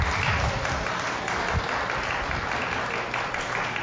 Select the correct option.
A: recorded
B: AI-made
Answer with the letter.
A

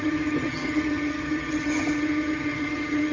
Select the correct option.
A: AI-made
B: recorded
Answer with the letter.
A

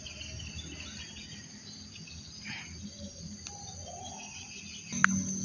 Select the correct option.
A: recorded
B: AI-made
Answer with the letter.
A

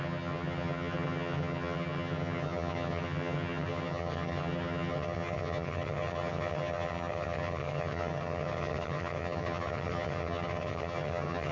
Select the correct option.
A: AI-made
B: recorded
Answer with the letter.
A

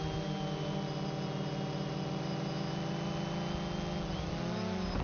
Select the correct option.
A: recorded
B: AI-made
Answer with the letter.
A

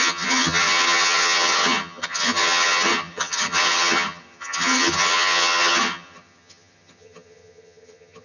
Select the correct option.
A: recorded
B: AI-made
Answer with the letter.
B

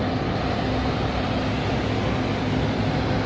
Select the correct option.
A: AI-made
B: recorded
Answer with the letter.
B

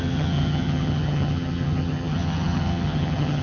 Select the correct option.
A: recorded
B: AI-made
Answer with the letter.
B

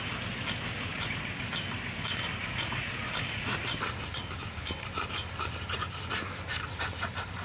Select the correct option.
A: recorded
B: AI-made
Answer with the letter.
A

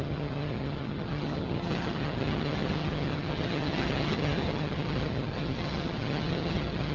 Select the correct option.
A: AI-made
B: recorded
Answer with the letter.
A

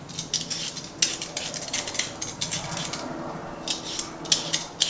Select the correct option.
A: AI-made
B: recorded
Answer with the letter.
B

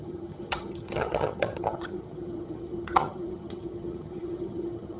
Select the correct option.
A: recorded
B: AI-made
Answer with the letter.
B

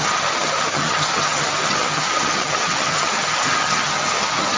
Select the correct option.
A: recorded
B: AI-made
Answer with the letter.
B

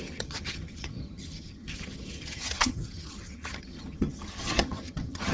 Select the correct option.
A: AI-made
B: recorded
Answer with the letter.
A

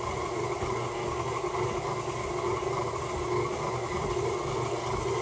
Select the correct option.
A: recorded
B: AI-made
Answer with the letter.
A